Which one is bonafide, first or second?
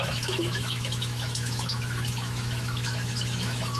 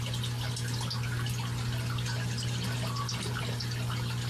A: second